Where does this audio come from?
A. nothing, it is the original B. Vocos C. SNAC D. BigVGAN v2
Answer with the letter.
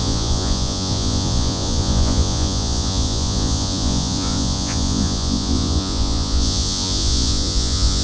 B